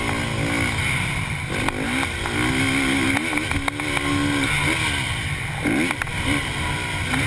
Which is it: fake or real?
real